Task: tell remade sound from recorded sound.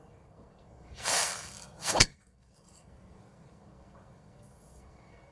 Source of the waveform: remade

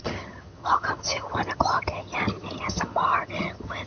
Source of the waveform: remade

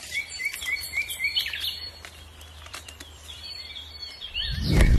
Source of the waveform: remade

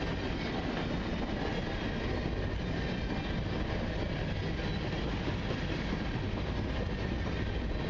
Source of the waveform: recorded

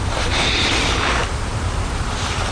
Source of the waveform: remade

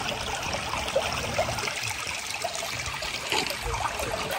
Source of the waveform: recorded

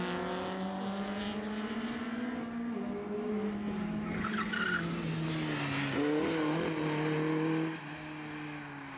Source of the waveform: recorded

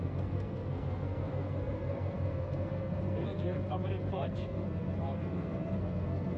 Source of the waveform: remade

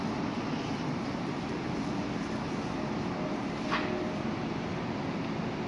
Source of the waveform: recorded